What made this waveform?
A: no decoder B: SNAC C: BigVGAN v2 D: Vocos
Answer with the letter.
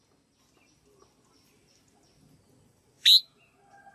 A